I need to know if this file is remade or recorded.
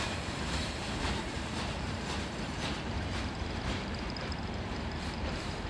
remade